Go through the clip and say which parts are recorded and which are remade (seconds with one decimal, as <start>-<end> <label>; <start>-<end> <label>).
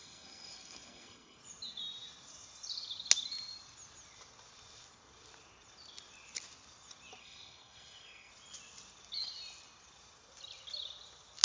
0.0-1.4 remade; 1.4-7.2 recorded; 7.2-8.3 remade; 8.3-11.4 recorded